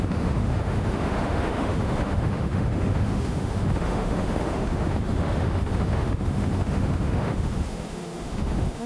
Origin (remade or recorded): remade